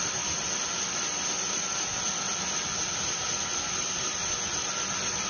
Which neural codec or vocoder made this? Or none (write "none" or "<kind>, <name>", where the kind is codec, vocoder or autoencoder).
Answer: none